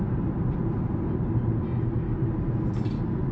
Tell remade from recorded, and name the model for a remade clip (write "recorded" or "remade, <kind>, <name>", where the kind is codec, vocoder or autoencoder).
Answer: recorded